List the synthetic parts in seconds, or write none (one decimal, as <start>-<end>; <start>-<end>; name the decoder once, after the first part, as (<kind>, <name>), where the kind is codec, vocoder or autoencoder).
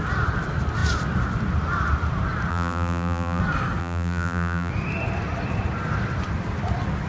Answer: 2.5-3.4 (vocoder, BigVGAN v2); 3.8-4.7